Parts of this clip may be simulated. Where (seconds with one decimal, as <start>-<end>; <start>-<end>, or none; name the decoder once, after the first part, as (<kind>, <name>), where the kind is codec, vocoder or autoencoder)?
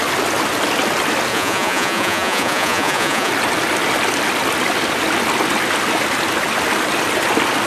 1.3-3.3 (vocoder, Vocos)